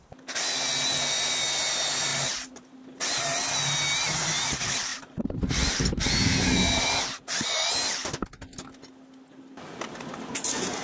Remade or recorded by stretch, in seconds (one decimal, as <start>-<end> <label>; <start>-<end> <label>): 0.0-2.1 recorded; 2.1-3.2 remade; 3.2-4.9 recorded; 4.9-5.5 remade; 5.5-10.8 recorded